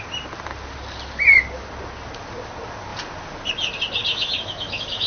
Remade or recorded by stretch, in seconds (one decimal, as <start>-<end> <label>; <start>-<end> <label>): 0.0-4.1 recorded; 4.1-5.1 remade